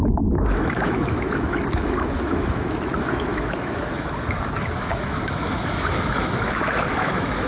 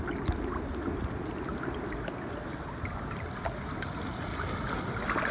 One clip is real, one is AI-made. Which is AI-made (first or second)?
first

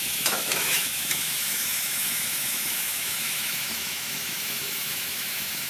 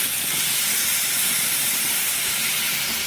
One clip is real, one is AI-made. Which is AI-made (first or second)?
first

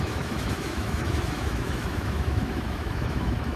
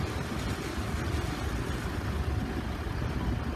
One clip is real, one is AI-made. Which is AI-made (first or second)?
first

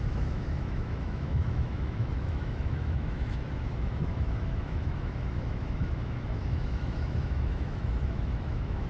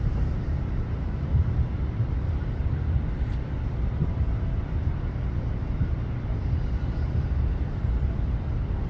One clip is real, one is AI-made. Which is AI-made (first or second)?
first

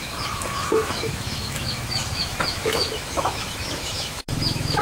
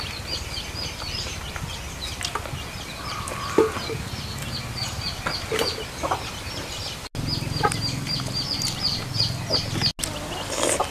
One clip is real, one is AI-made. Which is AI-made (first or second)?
first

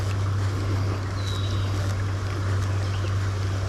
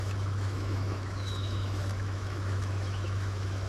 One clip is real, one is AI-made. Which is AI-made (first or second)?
second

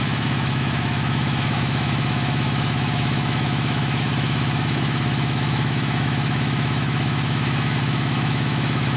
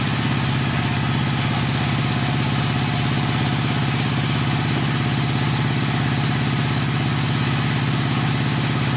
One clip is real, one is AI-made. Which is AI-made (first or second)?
first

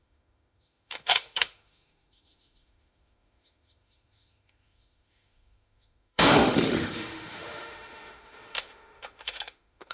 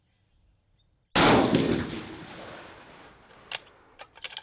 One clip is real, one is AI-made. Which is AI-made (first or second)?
first